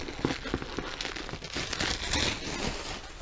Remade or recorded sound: recorded